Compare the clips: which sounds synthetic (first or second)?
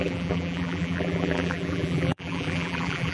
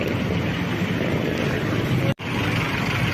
first